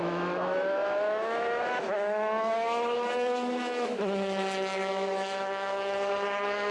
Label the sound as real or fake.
fake